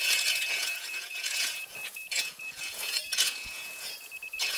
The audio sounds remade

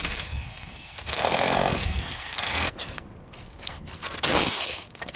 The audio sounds remade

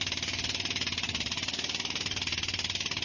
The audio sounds recorded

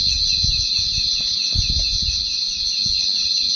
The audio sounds recorded